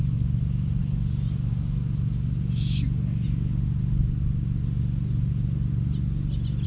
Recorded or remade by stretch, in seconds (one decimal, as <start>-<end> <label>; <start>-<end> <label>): 0.0-6.7 recorded